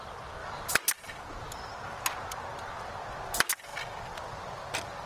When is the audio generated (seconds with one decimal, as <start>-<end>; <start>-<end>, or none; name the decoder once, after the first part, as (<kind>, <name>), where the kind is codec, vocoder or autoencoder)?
none